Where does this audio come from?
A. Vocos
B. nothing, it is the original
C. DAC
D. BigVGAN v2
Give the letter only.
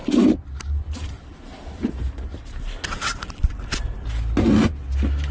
B